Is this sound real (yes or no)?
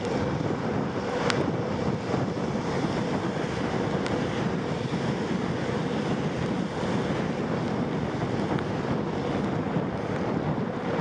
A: yes